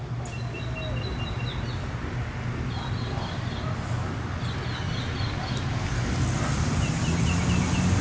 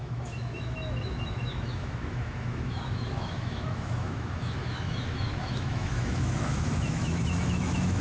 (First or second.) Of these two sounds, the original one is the first